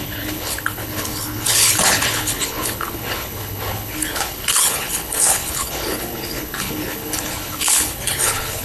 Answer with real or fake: fake